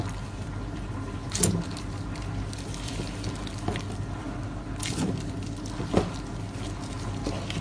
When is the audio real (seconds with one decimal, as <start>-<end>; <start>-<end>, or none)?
0.0-7.6